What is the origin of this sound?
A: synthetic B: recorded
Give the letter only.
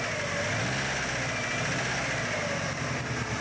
B